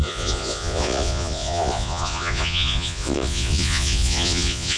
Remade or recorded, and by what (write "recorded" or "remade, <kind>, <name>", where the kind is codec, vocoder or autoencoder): remade, vocoder, Vocos